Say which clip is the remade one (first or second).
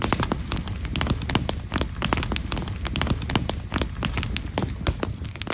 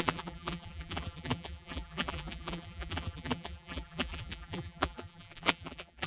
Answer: second